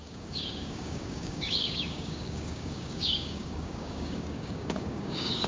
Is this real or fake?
fake